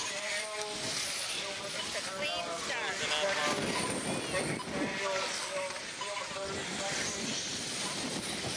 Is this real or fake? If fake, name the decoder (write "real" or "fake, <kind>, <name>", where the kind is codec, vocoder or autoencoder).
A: real